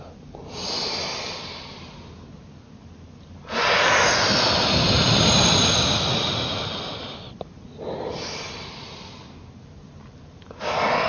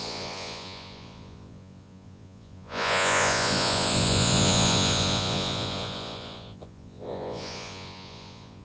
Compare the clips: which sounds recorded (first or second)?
first